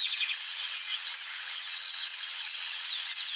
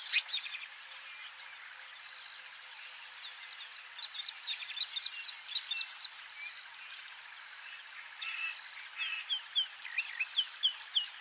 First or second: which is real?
second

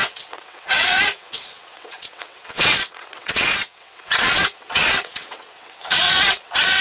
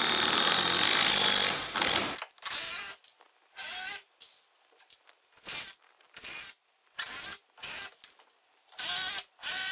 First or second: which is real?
second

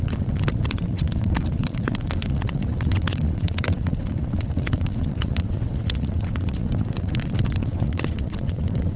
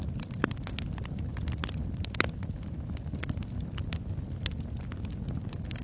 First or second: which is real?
second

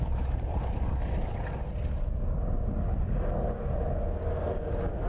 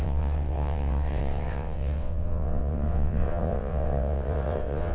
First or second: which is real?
first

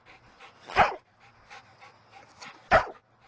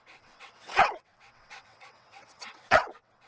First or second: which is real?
first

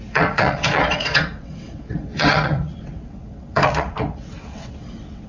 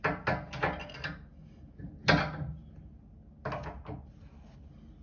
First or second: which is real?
second